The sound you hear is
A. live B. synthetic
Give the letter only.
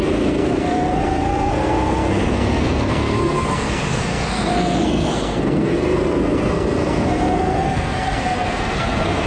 B